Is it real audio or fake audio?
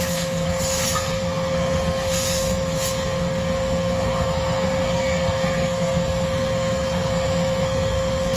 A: fake